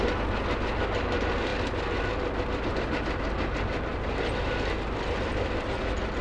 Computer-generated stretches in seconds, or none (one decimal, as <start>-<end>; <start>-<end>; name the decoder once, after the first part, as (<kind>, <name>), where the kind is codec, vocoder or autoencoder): none